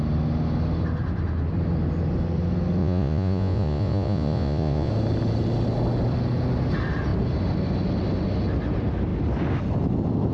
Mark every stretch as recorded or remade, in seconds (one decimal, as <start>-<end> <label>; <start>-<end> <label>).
0.0-2.8 recorded; 2.8-4.9 remade; 4.9-10.3 recorded